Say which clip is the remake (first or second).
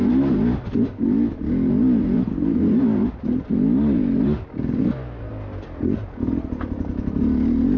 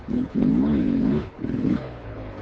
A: second